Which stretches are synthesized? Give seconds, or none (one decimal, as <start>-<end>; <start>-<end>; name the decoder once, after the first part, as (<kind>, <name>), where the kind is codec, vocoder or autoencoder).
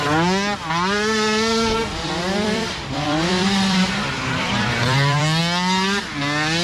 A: 1.9-5.4 (vocoder, BigVGAN v2)